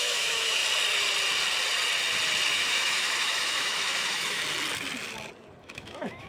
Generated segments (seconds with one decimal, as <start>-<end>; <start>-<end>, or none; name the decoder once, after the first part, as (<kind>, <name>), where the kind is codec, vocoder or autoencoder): 0.0-0.6 (autoencoder, DAC-VAE); 2.5-4.4; 5.6-6.3